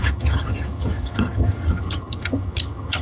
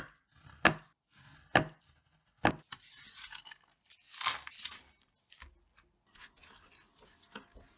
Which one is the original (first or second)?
second